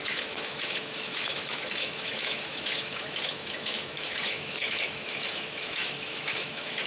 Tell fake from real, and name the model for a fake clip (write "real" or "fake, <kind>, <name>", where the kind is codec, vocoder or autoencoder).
fake, autoencoder, DAC-VAE